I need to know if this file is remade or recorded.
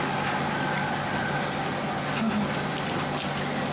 recorded